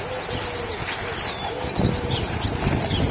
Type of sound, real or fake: real